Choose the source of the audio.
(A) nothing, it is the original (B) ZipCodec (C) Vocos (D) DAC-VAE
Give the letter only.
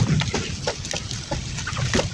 A